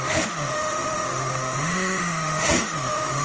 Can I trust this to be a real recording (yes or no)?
no